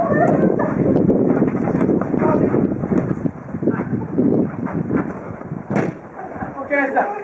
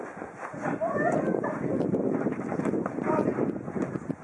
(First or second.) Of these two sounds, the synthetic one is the first